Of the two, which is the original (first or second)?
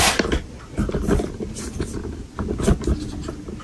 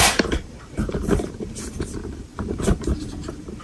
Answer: first